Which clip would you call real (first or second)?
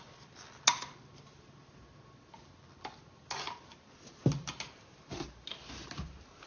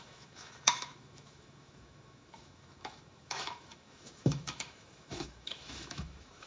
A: first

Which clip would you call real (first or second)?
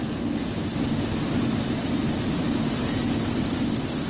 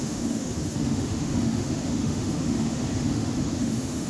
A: first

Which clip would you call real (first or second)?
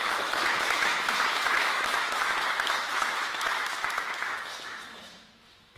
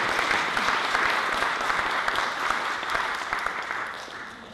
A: second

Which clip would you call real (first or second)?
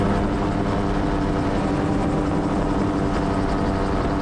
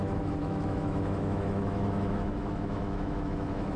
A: first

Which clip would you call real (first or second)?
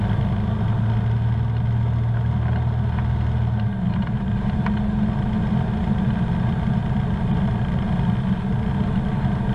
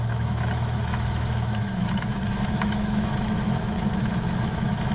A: first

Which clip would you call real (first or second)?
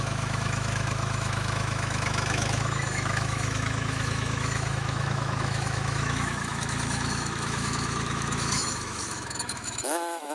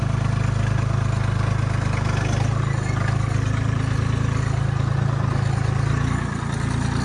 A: second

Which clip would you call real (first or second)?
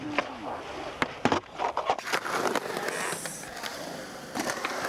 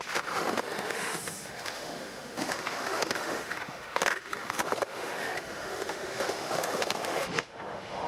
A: first